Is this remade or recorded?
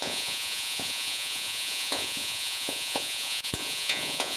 remade